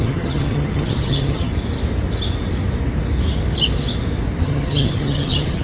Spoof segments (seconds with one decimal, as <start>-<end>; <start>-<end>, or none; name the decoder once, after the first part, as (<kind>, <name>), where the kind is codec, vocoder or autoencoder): 0.0-1.5 (vocoder, HiFi-GAN); 4.4-5.6